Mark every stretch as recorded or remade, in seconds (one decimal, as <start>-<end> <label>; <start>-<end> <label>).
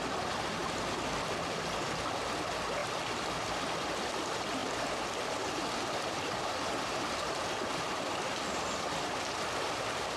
0.0-10.2 recorded